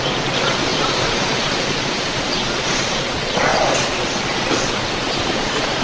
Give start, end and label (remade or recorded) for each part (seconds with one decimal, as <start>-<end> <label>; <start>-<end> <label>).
0.0-5.8 remade